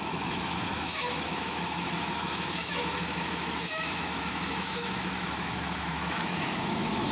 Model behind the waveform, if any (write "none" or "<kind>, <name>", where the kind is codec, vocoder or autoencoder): autoencoder, DAC-VAE